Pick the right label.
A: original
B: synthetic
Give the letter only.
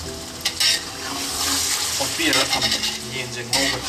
A